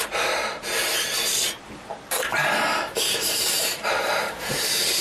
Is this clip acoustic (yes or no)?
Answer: no